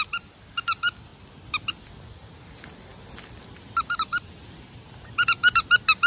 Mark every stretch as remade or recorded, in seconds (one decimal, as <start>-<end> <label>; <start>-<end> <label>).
0.0-6.1 recorded